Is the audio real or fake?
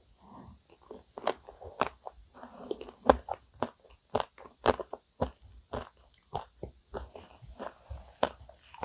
real